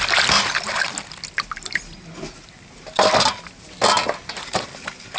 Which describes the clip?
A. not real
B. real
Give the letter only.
B